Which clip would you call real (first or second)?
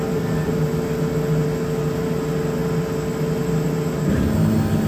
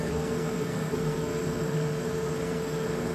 first